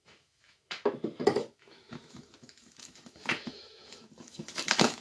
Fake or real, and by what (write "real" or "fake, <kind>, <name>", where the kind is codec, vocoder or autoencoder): fake, autoencoder, DAC-VAE